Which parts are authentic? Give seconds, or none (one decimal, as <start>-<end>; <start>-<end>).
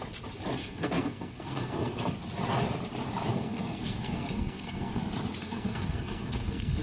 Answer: 0.0-0.6; 2.1-3.3; 5.0-5.4